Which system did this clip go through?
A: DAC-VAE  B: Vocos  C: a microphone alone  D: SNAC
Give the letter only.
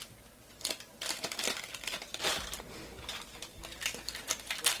C